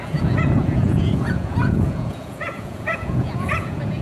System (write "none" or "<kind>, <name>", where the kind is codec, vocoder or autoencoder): vocoder, Vocos